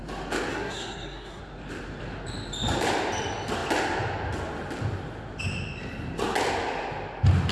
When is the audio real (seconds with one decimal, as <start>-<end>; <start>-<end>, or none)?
0.0-0.5; 1.4-7.5